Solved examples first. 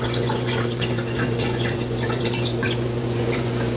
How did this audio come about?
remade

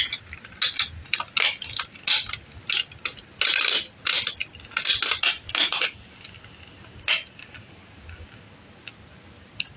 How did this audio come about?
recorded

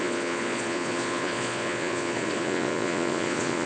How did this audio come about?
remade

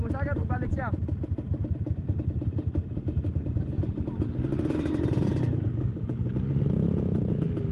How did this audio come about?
recorded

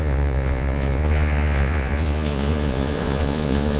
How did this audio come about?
remade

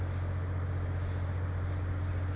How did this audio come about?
recorded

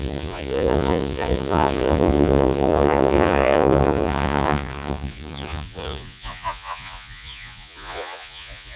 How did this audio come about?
remade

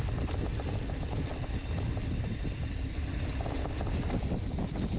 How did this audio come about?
recorded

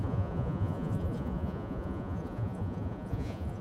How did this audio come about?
remade